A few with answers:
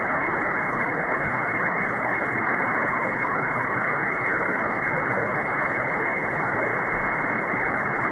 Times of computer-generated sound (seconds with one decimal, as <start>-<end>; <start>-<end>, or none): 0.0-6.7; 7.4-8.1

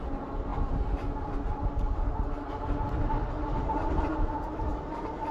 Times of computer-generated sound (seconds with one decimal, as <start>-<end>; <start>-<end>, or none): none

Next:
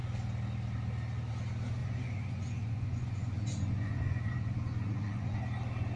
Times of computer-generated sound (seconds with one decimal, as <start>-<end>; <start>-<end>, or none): 1.8-5.4

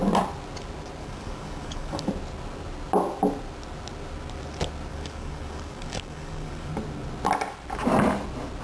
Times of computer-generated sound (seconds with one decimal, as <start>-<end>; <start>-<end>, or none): 1.0-2.1; 4.9-6.7

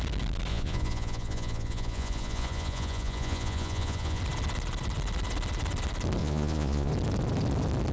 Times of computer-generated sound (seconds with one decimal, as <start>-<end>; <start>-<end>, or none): 0.5-4.2; 6.2-6.9

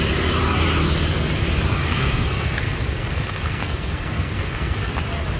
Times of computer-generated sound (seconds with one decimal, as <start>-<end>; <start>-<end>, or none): 1.8-4.9

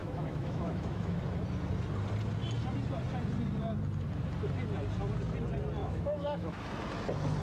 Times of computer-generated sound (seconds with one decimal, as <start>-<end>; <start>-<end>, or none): 0.0-1.2; 5.8-6.6

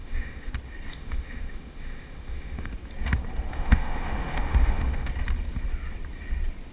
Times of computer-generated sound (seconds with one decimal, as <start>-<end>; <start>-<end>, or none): 0.0-0.5; 0.9-2.7; 3.5-5.1